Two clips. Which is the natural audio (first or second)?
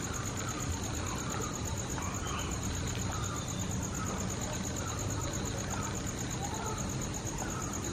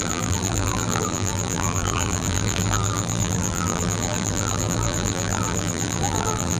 first